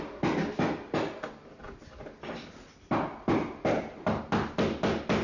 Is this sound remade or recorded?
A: recorded